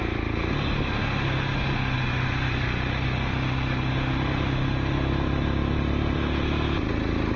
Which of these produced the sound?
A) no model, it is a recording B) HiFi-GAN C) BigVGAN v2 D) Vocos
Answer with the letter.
A